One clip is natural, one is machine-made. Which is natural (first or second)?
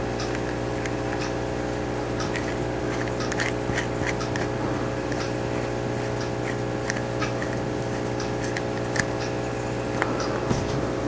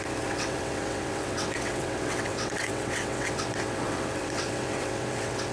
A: first